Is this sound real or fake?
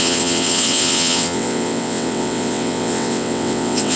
fake